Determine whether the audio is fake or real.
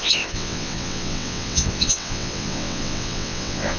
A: fake